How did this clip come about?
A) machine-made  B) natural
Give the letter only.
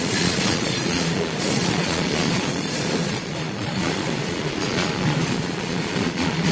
A